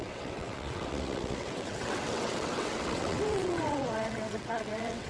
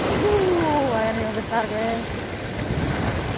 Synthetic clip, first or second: first